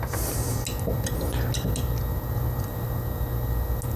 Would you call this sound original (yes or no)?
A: yes